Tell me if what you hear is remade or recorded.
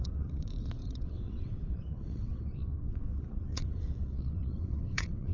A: remade